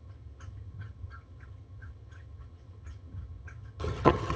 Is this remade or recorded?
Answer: remade